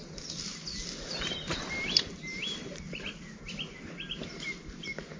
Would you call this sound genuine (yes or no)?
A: yes